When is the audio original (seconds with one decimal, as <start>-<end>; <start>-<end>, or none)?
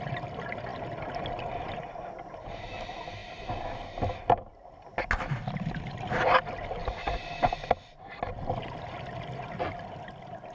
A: 0.0-10.5